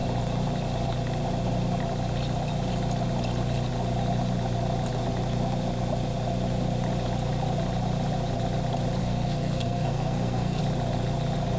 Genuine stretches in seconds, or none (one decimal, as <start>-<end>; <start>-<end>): 0.0-9.0; 10.6-11.6